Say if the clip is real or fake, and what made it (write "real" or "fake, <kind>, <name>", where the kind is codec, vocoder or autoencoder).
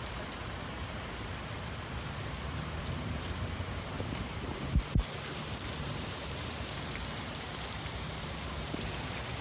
fake, vocoder, BigVGAN v2